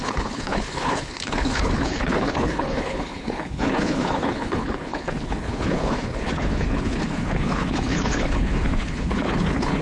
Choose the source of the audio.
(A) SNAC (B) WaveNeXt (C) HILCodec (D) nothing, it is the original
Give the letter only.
C